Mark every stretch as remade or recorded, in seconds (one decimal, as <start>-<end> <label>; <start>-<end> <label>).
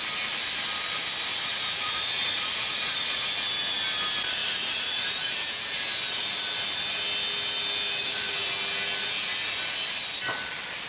0.0-1.3 recorded; 1.3-3.2 remade; 3.2-4.4 recorded; 4.4-5.3 remade; 5.3-8.0 recorded; 8.0-8.5 remade; 8.5-10.9 recorded